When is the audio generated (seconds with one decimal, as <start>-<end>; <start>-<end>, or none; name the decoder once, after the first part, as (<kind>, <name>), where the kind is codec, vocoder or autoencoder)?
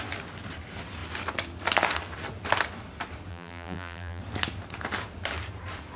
3.3-4.2 (vocoder, BigVGAN v2)